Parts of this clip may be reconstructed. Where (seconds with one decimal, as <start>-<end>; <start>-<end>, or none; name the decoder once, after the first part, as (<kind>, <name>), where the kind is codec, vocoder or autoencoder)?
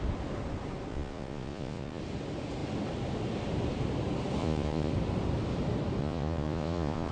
0.9-2.0 (vocoder, Vocos); 4.4-4.9; 6.0-7.1